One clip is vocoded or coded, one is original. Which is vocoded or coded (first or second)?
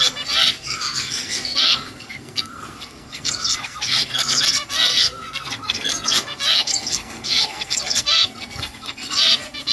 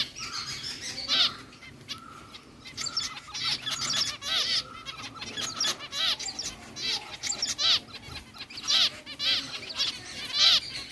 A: first